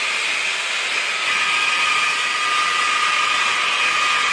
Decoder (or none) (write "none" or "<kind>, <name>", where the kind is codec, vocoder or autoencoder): none